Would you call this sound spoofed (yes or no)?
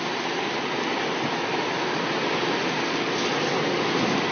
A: no